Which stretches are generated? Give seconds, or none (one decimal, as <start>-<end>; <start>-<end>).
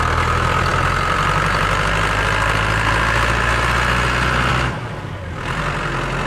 0.0-6.3